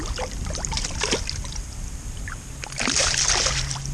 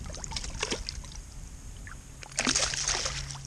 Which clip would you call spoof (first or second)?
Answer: first